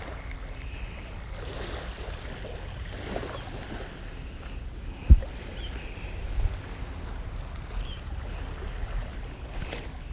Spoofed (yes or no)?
no